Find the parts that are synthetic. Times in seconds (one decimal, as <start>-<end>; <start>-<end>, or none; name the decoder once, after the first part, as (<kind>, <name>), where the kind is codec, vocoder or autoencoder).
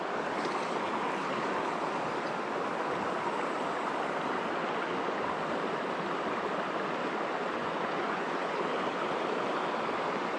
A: 7.6-8.7 (vocoder, Vocos)